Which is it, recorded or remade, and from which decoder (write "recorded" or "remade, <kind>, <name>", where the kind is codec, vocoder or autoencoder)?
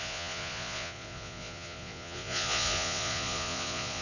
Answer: remade, vocoder, Vocos